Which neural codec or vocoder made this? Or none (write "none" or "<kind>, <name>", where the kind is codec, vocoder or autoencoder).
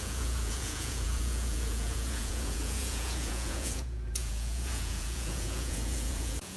vocoder, Vocos